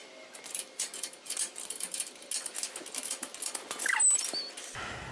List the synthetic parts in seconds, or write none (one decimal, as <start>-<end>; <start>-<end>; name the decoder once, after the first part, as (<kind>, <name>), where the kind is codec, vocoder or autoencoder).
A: none